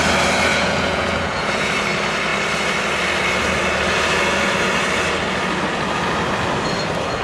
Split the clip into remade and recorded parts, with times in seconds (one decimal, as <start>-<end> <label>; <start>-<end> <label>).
0.0-0.5 recorded; 0.5-1.7 remade; 1.7-7.2 recorded